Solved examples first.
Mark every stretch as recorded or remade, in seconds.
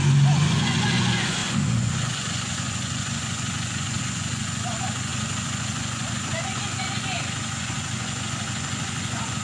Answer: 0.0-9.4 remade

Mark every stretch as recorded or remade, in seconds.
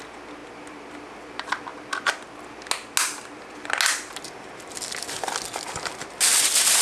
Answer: 0.0-6.8 recorded